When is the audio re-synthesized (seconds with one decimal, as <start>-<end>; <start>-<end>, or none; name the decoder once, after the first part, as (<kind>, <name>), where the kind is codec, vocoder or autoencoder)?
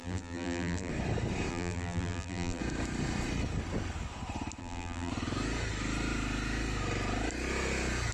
0.0-0.9 (vocoder, BigVGAN v2); 1.5-2.6; 4.6-5.1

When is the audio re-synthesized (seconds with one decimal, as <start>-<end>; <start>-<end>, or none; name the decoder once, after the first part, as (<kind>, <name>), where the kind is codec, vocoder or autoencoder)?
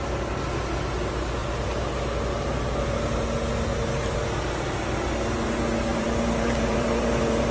5.9-7.5 (vocoder, BigVGAN v2)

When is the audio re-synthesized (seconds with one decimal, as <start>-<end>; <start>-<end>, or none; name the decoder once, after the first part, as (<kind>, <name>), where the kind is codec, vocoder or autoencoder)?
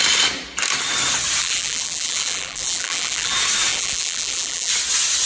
1.4-3.3 (vocoder, BigVGAN v2); 3.7-4.7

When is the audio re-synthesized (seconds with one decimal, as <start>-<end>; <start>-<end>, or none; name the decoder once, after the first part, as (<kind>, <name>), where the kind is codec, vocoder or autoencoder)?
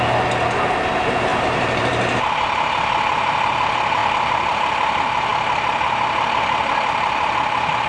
1.3-2.2 (vocoder, BigVGAN v2); 4.0-4.6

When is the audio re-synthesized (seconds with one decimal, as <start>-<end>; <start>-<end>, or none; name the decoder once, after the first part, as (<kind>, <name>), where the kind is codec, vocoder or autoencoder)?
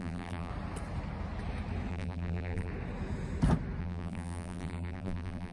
0.0-0.5 (vocoder, BigVGAN v2); 1.9-2.7; 3.8-5.5